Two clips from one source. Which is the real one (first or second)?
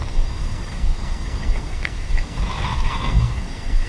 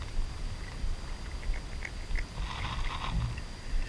second